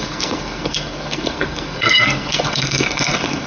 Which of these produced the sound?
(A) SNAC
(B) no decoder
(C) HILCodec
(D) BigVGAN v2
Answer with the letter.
A